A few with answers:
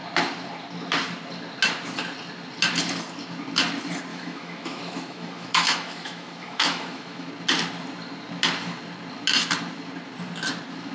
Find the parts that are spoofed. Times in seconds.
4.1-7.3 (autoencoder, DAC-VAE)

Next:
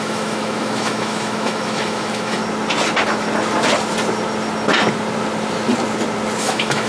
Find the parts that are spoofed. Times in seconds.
0.0-2.4 (autoencoder, DAC-VAE); 6.4-6.9

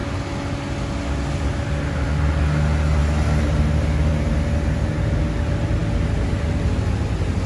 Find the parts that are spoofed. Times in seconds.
none

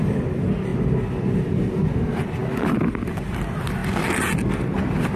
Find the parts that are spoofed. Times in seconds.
none

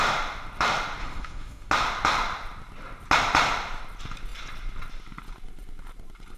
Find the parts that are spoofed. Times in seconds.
1.0-1.7 (autoencoder, DAC-VAE)